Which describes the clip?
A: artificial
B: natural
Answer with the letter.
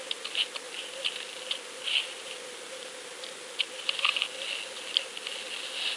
B